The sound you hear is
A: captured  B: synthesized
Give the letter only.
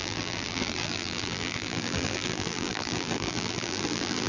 B